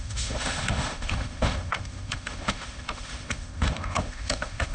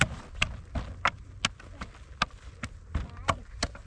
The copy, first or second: first